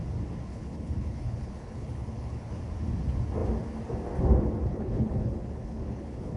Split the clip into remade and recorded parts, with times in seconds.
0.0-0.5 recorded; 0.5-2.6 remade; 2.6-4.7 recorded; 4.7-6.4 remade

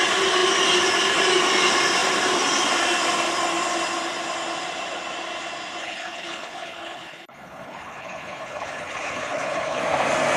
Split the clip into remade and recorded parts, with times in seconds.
0.0-5.8 recorded; 5.8-9.8 remade; 9.8-10.4 recorded

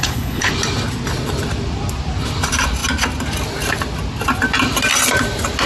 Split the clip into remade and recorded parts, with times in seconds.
0.0-0.5 remade; 0.5-5.7 recorded

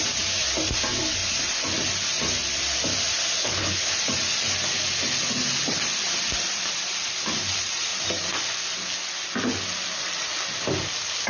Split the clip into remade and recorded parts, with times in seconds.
0.0-3.4 recorded; 3.4-3.9 remade; 3.9-11.3 recorded

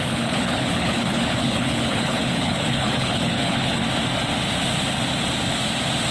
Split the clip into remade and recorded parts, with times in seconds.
0.0-3.8 remade; 3.8-6.1 recorded